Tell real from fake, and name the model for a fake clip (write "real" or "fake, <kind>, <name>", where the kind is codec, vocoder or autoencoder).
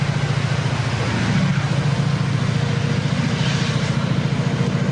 real